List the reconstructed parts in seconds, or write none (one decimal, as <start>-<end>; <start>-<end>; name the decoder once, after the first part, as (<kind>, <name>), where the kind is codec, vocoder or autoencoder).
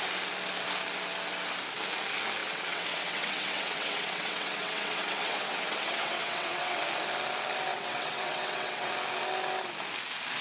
2.4-6.8 (vocoder, WaveNeXt); 7.7-8.9